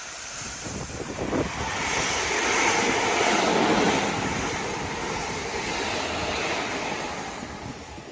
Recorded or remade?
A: recorded